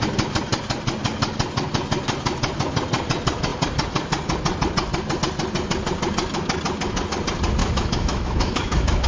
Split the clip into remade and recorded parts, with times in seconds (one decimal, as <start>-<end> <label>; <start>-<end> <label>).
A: 0.0-7.6 recorded; 7.6-9.1 remade